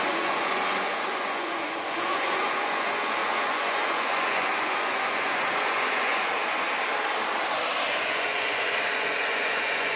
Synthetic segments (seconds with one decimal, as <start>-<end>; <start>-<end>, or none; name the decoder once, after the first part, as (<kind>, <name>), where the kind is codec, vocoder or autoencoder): 0.0-6.3 (vocoder, Vocos); 8.0-10.0